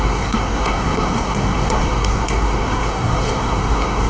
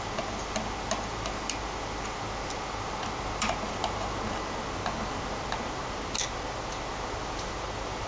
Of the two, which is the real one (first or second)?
second